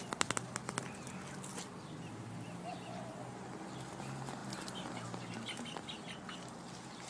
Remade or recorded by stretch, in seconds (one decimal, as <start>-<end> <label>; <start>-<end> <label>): 0.0-7.1 recorded

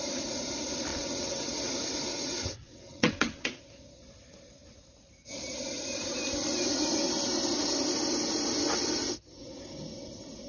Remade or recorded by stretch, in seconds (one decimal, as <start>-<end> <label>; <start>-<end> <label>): 0.0-0.9 recorded; 0.9-1.7 remade; 1.7-2.1 recorded; 2.1-3.6 remade; 3.6-10.5 recorded

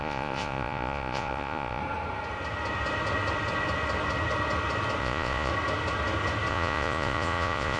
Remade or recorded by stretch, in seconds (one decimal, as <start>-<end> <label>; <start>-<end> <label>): 0.0-1.8 remade; 1.8-5.0 recorded; 5.0-5.5 remade; 5.5-6.5 recorded; 6.5-7.8 remade

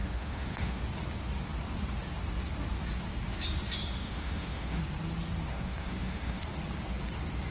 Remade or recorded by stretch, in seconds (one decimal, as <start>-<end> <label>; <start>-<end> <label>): 0.0-0.8 remade; 0.8-4.0 recorded; 4.0-4.8 remade; 4.8-5.5 recorded; 5.5-6.4 remade; 6.4-7.5 recorded

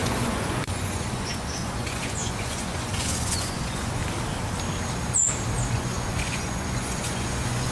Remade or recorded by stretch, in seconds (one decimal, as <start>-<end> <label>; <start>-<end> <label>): 0.0-4.0 remade; 4.0-5.7 recorded; 5.7-7.7 remade

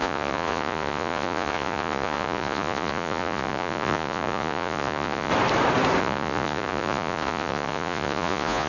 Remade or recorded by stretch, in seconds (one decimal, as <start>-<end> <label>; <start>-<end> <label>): 0.0-5.3 remade; 5.3-6.0 recorded; 6.0-8.7 remade

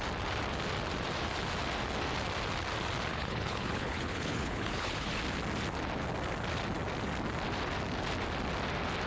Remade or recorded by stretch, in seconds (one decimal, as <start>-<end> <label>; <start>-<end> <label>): 0.0-3.1 recorded; 3.1-5.2 remade; 5.2-9.1 recorded

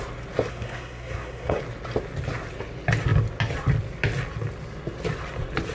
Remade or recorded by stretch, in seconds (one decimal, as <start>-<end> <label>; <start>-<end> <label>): 0.0-0.5 recorded; 0.5-1.6 remade; 1.6-5.7 recorded